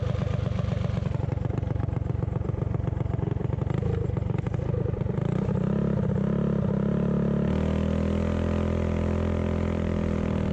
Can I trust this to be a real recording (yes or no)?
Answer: yes